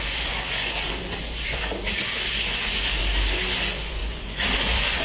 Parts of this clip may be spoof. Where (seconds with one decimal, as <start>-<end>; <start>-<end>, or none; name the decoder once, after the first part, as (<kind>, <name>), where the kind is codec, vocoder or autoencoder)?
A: 0.0-3.0 (vocoder, Vocos); 3.6-5.0

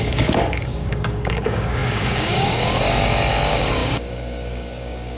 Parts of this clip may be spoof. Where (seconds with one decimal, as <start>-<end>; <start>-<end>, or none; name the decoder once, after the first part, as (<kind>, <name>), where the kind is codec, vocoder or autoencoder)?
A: 0.0-5.2 (codec, DAC)

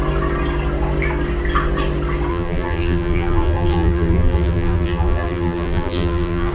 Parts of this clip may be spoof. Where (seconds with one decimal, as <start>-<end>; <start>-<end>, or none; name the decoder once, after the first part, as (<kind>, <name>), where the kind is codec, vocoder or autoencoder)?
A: 2.3-6.5 (vocoder, BigVGAN v2)

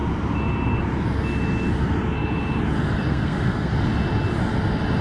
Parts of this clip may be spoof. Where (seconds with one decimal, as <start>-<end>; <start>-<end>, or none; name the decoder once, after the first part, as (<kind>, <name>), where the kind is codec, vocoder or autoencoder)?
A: 3.1-3.7 (codec, SNAC)

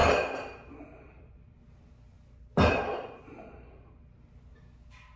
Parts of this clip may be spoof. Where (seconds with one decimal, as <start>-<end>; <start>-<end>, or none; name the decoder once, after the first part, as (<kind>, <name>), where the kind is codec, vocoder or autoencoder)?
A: none

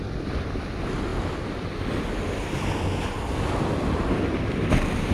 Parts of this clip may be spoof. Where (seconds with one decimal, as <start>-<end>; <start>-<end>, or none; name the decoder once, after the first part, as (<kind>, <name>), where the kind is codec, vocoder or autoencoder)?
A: none